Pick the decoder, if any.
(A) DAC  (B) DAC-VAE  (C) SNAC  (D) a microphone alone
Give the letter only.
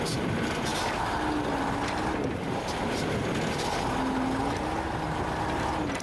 D